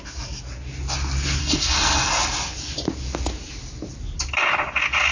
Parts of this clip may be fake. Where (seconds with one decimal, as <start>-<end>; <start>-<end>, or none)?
1.4-2.1